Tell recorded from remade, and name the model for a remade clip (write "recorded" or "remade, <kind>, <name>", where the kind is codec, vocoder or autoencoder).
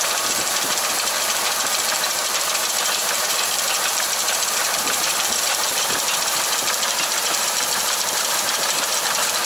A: remade, vocoder, BigVGAN v2